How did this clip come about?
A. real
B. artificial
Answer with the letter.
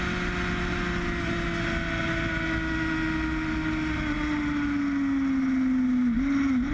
A